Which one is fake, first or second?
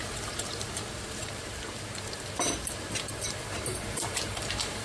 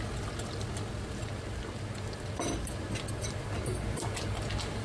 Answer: first